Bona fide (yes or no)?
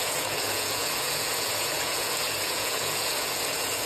no